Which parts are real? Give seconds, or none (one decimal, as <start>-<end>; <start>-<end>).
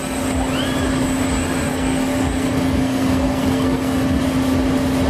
0.0-1.7; 4.2-5.1